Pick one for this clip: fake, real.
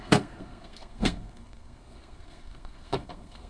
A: fake